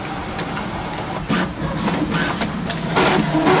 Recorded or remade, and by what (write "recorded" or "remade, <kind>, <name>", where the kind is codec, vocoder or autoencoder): recorded